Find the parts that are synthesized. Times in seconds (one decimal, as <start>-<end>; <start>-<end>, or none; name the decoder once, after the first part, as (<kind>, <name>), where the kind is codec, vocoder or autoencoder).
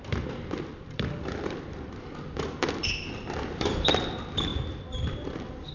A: 0.7-4.1 (vocoder, BigVGAN v2)